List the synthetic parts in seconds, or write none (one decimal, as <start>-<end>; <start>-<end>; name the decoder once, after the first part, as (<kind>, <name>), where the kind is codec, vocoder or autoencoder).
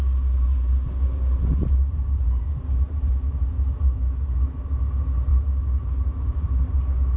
1.5-3.5 (vocoder, BigVGAN v2)